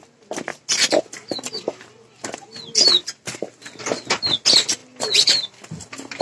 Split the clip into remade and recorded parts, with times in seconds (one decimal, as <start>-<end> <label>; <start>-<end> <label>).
0.0-6.2 recorded